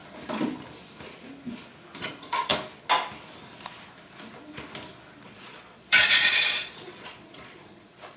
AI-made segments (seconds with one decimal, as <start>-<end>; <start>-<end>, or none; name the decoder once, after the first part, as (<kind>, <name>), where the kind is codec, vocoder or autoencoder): 2.0-2.5 (vocoder, Vocos); 5.3-8.2